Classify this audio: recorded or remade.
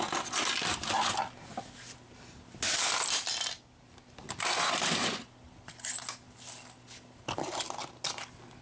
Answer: recorded